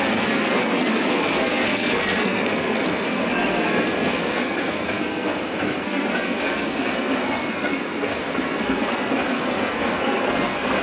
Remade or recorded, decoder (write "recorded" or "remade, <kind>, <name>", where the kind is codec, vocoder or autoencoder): remade, codec, SNAC